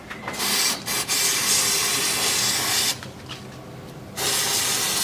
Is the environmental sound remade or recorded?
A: recorded